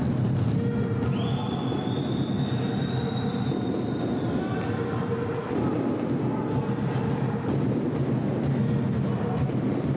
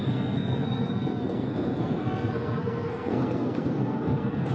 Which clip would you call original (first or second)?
first